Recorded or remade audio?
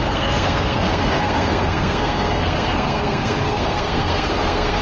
remade